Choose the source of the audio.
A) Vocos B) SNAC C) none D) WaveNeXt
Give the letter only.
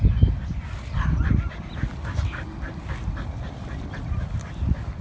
C